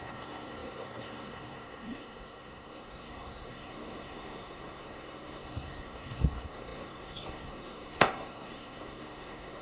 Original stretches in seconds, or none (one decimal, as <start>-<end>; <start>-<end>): none